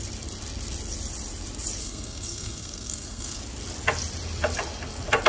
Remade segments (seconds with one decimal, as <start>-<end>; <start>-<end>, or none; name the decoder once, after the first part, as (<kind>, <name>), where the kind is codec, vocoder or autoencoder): 1.8-3.4 (codec, SNAC)